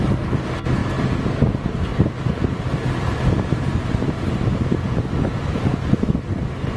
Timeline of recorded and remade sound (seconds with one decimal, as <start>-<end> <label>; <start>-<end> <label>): 0.0-6.8 recorded